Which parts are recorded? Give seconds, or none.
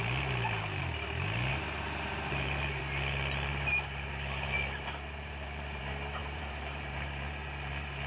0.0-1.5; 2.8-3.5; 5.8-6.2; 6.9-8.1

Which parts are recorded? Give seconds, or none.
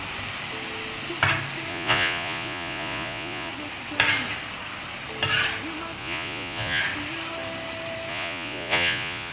0.0-1.7; 3.5-6.0; 6.8-8.1